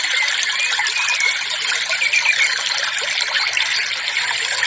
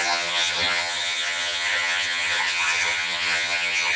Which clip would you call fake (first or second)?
second